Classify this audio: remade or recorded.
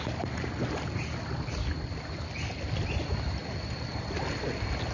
recorded